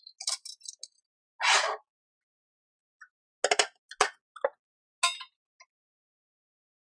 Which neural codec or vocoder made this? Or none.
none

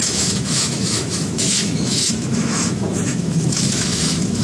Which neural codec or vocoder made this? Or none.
autoencoder, DAC-VAE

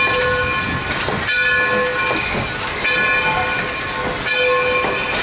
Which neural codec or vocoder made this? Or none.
none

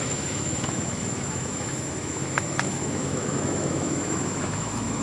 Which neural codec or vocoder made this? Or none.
autoencoder, DAC-VAE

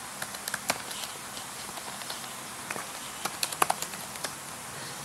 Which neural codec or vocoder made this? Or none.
none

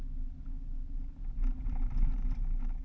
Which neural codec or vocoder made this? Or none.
none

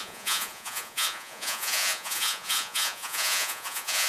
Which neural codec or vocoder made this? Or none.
vocoder, Vocos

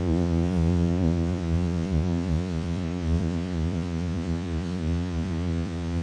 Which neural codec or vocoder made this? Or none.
vocoder, Vocos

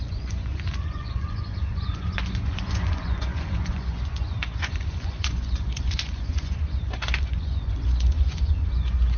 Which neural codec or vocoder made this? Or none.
vocoder, Vocos